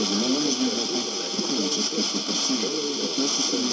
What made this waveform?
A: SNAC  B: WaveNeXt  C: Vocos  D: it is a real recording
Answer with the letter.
D